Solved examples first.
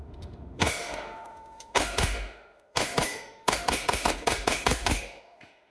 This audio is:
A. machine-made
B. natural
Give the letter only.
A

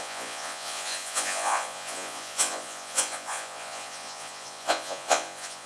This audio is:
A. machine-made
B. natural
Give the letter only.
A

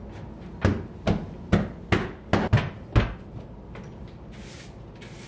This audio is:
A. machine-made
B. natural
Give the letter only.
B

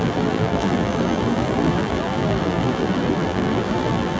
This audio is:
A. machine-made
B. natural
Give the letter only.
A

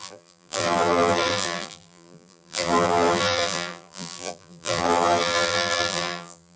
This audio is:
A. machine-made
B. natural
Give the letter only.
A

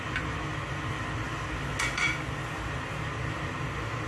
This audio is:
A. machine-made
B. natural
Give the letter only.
B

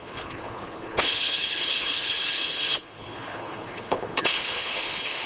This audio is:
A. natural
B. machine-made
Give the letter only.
B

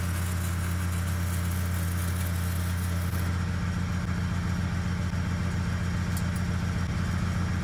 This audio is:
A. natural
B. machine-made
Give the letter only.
A